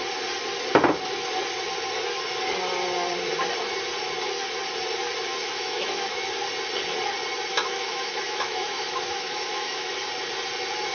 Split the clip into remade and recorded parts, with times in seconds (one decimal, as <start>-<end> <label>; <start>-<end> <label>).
0.0-5.4 recorded; 5.4-6.3 remade; 6.3-7.5 recorded; 7.5-9.9 remade; 9.9-10.9 recorded